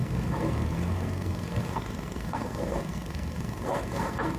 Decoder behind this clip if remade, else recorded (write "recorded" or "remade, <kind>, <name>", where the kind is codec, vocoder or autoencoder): remade, codec, SNAC